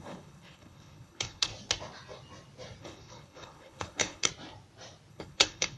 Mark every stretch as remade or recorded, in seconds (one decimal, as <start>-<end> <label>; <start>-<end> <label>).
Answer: 0.0-1.5 remade; 1.5-2.8 recorded; 2.8-4.3 remade; 4.3-5.1 recorded; 5.1-5.8 remade